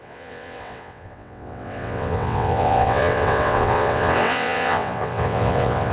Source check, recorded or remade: remade